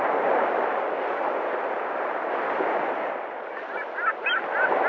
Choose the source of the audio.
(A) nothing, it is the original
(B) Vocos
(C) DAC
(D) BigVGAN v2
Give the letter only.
A